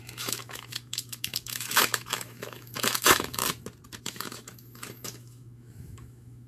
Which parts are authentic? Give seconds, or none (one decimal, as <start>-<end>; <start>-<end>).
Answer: 3.4-4.0